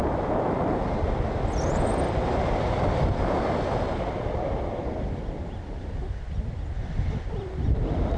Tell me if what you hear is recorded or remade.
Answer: recorded